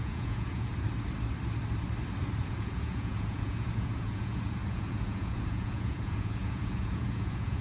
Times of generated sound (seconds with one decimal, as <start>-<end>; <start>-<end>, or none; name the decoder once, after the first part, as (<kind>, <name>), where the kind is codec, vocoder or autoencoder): 0.0-0.7 (vocoder, Vocos); 2.4-7.6